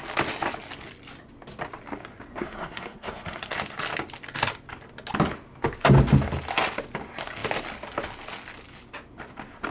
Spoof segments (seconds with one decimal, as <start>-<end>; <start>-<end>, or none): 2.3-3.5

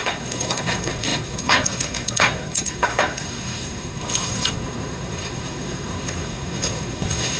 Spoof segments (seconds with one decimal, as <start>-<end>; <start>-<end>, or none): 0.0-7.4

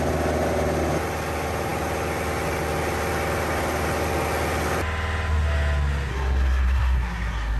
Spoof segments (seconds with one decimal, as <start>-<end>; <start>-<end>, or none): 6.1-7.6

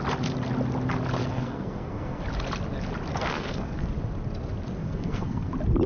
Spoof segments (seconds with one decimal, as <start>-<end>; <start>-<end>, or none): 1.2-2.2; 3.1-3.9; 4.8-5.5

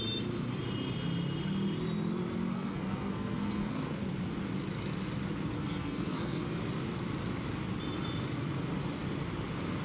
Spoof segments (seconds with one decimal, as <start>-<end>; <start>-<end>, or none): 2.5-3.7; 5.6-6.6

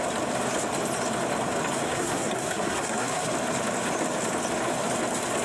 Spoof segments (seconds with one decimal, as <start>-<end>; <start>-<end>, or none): 1.9-3.3

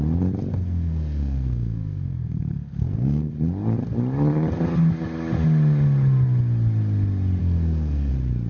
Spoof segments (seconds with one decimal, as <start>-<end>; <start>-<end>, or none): 0.5-3.3; 7.4-8.1